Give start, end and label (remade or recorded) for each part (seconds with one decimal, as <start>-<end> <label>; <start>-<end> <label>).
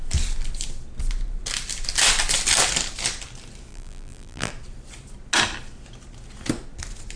0.0-3.7 recorded; 3.7-4.5 remade; 4.5-7.2 recorded